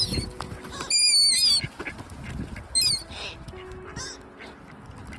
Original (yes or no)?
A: yes